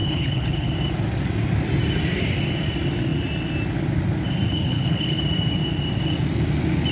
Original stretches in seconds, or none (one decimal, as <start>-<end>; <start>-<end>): 0.7-4.5; 5.2-6.9